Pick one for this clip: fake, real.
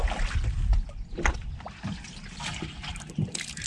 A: real